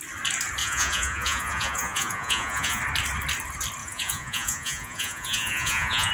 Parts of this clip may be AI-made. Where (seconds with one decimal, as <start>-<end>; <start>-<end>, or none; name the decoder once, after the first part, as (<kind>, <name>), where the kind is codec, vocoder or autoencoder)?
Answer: 0.6-2.8 (vocoder, Vocos); 3.8-6.1

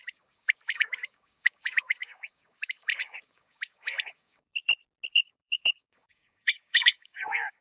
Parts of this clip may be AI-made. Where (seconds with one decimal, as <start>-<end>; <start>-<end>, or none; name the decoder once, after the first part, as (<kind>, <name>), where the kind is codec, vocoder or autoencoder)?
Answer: 0.0-4.5 (codec, DAC); 5.1-7.6

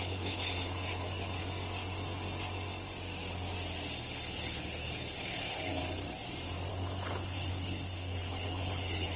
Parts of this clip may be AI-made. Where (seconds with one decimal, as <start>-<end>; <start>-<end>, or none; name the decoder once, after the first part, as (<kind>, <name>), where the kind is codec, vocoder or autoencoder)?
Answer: 0.0-1.4 (codec, HILCodec); 4.0-5.8; 6.7-9.2

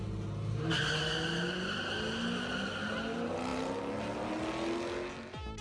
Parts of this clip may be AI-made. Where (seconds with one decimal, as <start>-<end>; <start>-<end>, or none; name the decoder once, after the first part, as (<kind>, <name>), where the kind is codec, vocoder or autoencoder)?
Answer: none

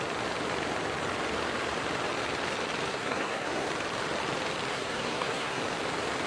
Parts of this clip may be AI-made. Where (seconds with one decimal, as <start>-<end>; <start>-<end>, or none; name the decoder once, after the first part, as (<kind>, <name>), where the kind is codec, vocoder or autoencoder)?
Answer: 2.9-3.7 (codec, SNAC); 4.7-5.6

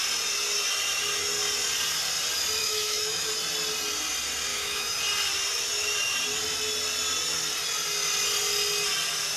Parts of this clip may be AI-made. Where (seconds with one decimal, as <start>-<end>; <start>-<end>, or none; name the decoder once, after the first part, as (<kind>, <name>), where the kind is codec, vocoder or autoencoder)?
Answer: 2.6-3.3 (autoencoder, DAC-VAE); 4.5-5.0

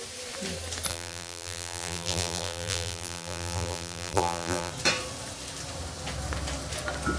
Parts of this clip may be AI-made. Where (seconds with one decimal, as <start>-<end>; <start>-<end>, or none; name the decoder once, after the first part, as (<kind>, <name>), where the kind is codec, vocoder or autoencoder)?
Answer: 0.9-4.7 (vocoder, BigVGAN v2)

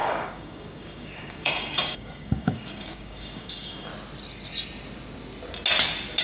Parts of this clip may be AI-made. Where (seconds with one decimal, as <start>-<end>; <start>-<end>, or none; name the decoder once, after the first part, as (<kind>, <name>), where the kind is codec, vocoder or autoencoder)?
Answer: 0.0-3.9 (codec, DAC)